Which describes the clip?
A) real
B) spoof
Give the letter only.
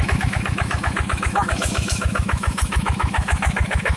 B